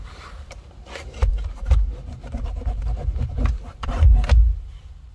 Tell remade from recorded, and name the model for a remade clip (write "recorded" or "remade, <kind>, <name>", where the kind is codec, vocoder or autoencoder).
remade, vocoder, BigVGAN v2